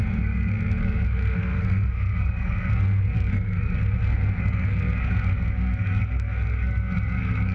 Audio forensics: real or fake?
fake